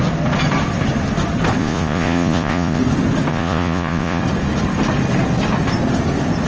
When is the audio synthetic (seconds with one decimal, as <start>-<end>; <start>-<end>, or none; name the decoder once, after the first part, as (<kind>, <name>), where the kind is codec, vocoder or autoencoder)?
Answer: 1.6-2.8 (vocoder, Vocos); 3.3-4.2